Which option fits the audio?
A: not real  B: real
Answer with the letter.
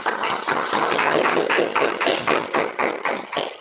A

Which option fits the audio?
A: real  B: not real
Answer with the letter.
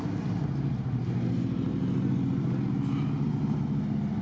A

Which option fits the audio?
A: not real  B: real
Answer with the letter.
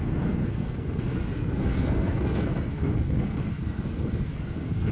A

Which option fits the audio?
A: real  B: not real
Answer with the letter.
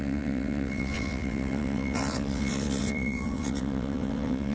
B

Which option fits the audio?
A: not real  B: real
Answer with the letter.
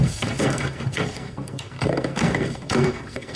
A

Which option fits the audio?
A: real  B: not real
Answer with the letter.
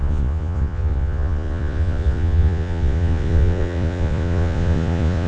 B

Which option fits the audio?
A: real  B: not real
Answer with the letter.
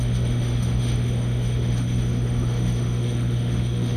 B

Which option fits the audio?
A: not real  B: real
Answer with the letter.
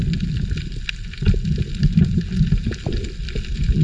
B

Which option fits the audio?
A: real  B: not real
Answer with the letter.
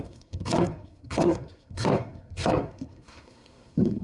B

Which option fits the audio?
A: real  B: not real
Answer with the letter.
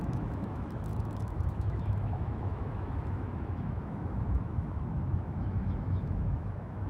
B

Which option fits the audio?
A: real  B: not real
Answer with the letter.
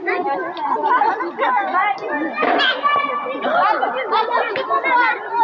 A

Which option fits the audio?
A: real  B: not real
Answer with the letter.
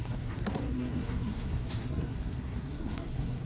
B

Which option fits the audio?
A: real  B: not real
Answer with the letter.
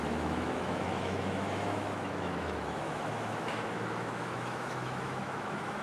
B